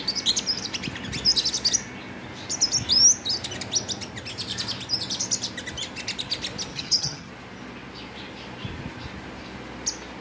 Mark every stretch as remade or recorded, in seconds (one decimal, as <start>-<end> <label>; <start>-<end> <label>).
0.0-6.7 recorded; 6.7-7.3 remade; 7.3-10.2 recorded